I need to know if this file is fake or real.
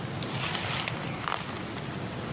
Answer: real